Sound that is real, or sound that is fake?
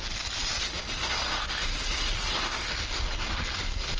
real